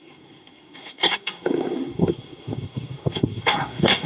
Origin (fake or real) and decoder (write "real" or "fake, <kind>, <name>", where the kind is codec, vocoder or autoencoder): fake, codec, SNAC